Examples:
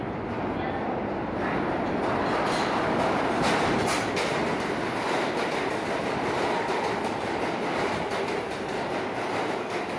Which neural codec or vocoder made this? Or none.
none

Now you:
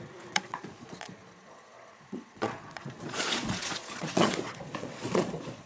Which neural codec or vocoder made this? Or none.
vocoder, Vocos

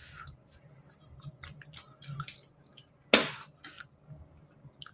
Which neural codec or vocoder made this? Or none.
none